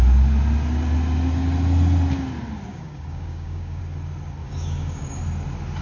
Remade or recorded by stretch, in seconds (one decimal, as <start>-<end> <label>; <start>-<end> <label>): 0.0-2.7 recorded; 2.7-3.8 remade; 3.8-4.4 recorded; 4.4-5.2 remade; 5.2-5.8 recorded